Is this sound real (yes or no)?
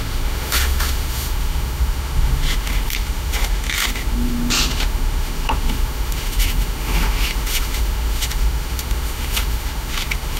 no